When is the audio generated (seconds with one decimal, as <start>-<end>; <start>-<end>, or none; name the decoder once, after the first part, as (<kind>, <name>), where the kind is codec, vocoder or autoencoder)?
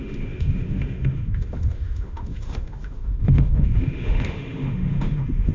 0.0-5.5 (autoencoder, DAC-VAE)